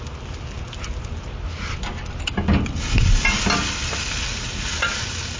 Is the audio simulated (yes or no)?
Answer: no